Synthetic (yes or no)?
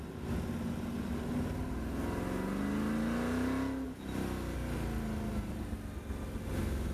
no